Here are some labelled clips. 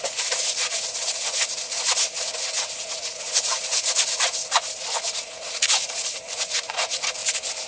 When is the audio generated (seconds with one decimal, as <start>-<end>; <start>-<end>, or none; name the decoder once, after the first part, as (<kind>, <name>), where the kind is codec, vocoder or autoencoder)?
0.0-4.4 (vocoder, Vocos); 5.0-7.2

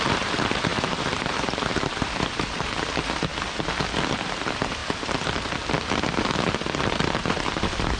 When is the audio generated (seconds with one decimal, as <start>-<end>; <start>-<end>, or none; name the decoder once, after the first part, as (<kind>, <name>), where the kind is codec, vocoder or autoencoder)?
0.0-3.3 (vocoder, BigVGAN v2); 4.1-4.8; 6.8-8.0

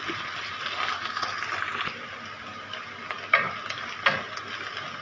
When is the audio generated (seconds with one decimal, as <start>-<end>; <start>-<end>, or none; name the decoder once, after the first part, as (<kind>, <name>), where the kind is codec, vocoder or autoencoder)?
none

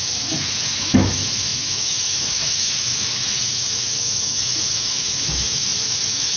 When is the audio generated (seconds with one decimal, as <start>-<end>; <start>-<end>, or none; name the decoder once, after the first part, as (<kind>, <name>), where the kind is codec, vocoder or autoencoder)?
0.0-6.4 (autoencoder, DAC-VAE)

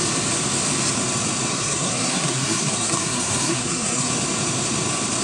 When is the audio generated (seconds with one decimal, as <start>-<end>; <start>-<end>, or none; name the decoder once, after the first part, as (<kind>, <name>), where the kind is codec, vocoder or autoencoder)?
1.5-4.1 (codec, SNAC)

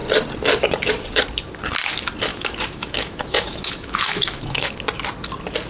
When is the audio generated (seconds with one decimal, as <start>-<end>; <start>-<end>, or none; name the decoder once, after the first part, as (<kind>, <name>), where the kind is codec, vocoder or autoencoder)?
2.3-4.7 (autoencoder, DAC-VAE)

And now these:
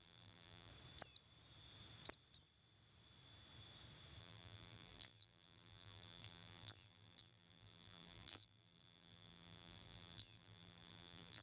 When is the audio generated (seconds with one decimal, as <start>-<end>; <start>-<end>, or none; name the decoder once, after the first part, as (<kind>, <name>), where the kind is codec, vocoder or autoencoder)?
0.0-0.7 (vocoder, BigVGAN v2); 4.2-11.4